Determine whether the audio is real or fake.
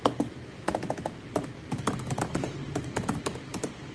real